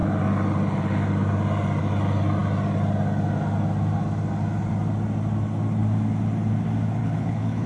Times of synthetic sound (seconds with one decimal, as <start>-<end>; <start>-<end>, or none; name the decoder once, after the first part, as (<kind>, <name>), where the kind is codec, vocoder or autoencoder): 7.0-7.7 (codec, HILCodec)